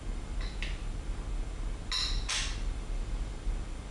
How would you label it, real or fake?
real